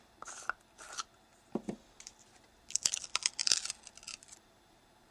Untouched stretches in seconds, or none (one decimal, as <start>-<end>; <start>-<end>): 0.0-5.1